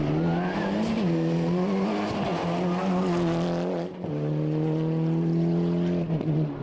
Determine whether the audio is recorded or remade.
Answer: recorded